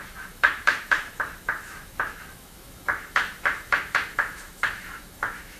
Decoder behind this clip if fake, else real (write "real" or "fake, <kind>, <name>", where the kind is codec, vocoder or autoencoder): fake, autoencoder, DAC-VAE